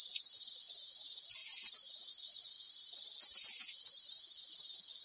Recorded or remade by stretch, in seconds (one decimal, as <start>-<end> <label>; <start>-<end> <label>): 0.0-5.0 recorded